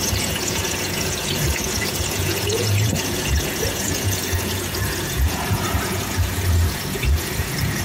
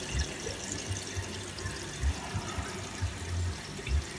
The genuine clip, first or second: second